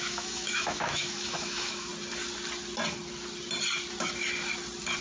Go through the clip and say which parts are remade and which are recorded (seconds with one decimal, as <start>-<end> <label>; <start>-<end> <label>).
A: 0.0-1.9 remade; 1.9-5.0 recorded